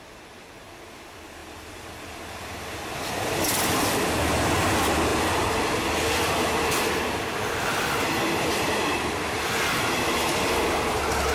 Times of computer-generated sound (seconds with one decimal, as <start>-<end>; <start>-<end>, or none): 5.1-9.4